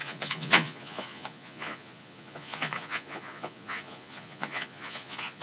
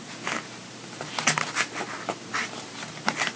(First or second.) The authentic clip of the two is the second